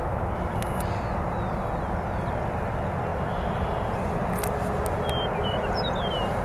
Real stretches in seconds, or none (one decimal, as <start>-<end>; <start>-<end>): 0.0-6.4